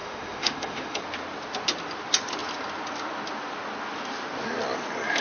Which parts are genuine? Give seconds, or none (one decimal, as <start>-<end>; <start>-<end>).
1.0-5.2